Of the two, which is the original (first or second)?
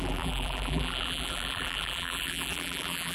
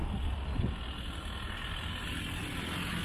second